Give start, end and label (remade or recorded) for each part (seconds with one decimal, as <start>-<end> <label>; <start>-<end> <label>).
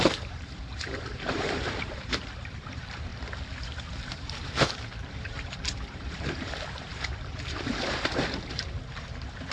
0.0-3.1 remade; 3.1-4.1 recorded; 4.1-9.5 remade